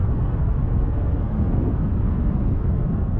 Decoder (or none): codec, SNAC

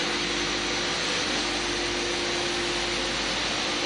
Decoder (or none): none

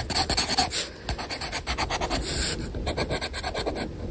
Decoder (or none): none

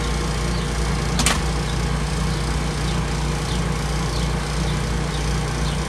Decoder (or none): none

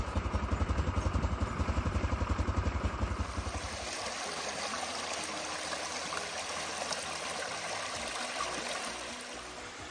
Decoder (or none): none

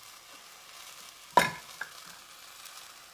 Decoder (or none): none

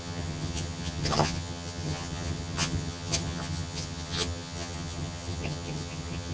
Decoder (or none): vocoder, HiFi-GAN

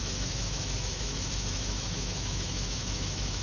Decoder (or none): autoencoder, DAC-VAE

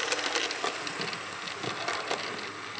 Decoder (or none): none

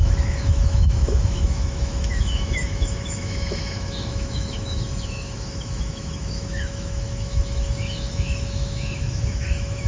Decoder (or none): autoencoder, DAC-VAE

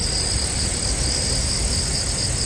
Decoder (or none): none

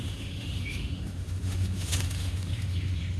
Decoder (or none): autoencoder, DAC-VAE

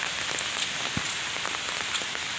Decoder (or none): none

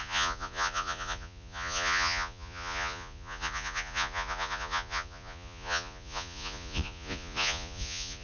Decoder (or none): vocoder, Vocos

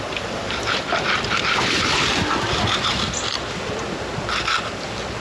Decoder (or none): vocoder, BigVGAN v2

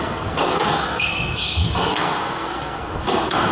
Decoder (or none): codec, SNAC